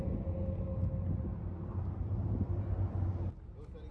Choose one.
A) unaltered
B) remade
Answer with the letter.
A